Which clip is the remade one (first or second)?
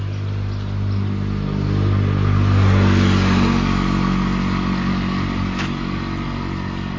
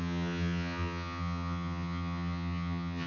second